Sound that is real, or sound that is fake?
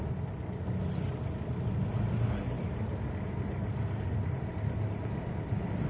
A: real